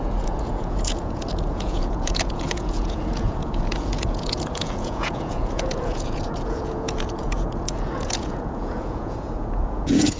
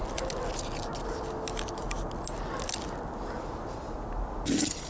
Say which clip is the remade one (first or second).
first